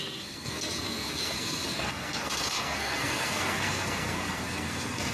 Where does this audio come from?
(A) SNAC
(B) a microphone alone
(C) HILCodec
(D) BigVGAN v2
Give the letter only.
A